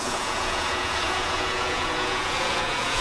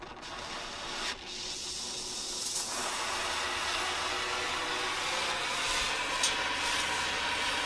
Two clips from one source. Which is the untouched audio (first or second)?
second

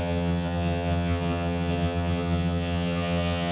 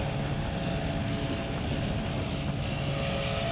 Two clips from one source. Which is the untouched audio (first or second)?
second